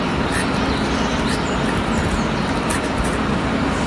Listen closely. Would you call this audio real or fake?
real